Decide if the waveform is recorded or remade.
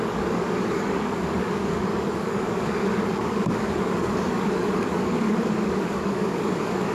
remade